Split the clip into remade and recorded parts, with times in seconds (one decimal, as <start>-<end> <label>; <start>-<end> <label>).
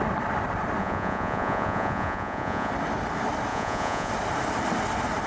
0.0-0.8 recorded; 0.8-2.7 remade; 2.7-3.5 recorded; 3.5-4.1 remade; 4.1-5.3 recorded